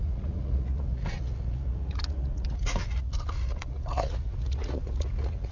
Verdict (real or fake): fake